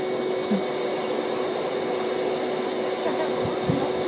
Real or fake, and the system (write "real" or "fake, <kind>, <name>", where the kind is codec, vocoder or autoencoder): real